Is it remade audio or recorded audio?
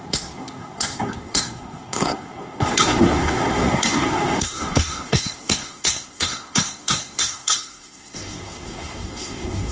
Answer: remade